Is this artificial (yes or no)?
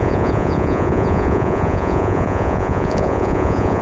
yes